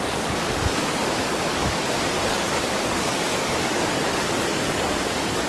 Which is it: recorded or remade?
remade